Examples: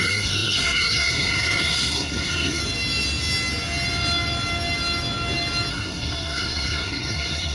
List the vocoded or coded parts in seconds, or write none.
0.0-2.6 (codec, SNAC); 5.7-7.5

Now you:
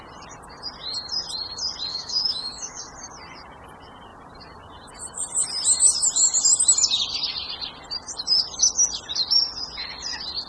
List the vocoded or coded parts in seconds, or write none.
1.9-2.8 (autoencoder, DAC-VAE)

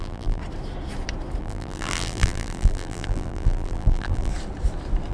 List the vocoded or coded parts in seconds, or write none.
0.0-0.4 (vocoder, BigVGAN v2); 1.4-4.3

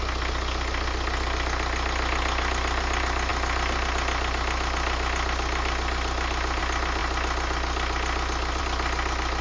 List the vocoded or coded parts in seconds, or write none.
none

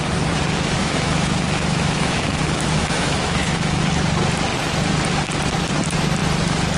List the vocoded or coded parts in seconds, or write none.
0.8-3.8 (autoencoder, DAC-VAE)

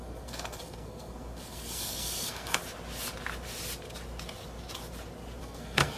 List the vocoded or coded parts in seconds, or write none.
0.0-2.6 (codec, SNAC); 5.4-6.0

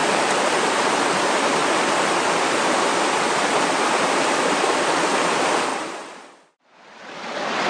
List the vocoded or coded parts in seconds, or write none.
0.0-1.0 (vocoder, BigVGAN v2); 5.7-6.3